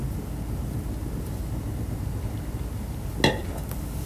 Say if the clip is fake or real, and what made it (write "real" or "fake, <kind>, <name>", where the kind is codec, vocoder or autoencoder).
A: real